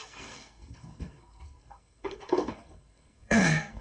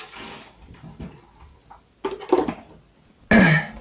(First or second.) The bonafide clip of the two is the second